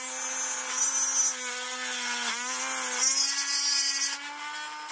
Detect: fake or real real